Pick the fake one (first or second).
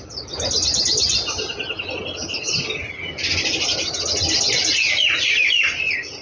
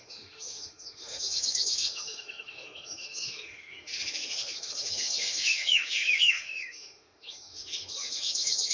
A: second